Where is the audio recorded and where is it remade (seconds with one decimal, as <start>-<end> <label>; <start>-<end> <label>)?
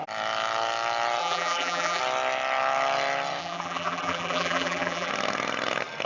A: 0.0-1.2 recorded; 1.2-2.0 remade; 2.0-3.4 recorded; 3.4-5.1 remade; 5.1-6.1 recorded